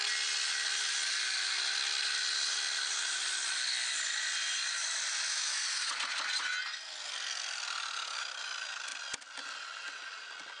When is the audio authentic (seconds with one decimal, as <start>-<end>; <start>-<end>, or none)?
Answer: 0.0-10.6